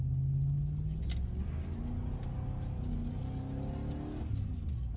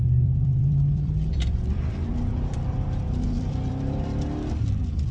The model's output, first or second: second